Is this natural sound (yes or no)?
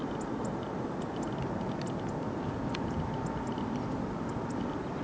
yes